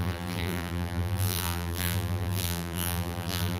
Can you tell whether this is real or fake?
fake